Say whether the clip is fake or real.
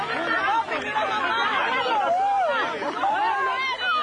real